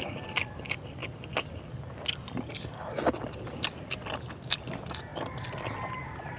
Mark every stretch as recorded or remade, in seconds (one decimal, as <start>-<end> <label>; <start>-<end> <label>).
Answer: 0.0-6.4 recorded